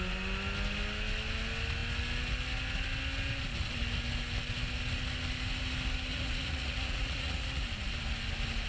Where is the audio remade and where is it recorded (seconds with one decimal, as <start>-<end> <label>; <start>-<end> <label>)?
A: 0.0-6.1 recorded; 6.1-7.6 remade; 7.6-8.7 recorded